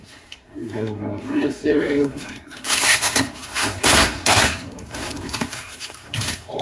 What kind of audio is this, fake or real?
fake